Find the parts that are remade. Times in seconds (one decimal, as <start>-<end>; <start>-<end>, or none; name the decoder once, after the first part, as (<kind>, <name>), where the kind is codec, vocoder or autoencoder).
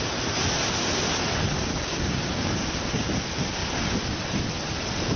1.7-2.7 (codec, DAC)